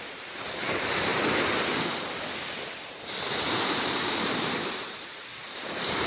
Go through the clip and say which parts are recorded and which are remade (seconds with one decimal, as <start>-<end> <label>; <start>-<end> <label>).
0.0-1.1 remade; 1.1-3.7 recorded; 3.7-6.1 remade